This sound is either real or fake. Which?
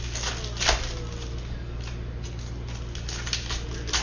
real